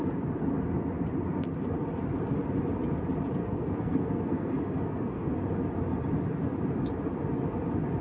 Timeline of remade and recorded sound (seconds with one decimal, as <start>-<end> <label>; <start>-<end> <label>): 0.0-3.4 recorded; 3.4-5.3 remade; 5.3-8.0 recorded